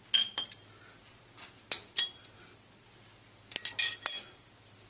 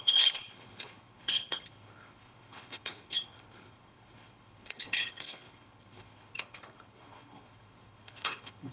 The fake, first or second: second